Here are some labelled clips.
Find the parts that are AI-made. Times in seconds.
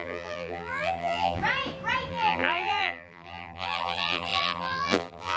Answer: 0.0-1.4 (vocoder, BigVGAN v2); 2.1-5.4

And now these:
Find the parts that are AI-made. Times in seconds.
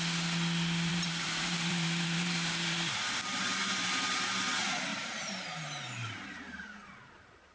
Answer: 0.9-3.0 (vocoder, BigVGAN v2); 4.9-6.4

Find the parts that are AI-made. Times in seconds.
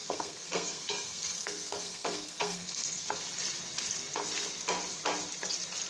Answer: 0.0-3.2 (codec, SNAC)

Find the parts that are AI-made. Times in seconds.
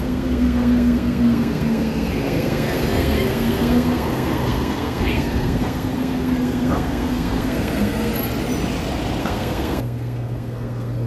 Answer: 0.0-8.1 (codec, SNAC); 9.2-11.1